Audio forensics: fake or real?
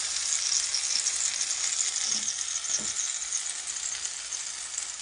real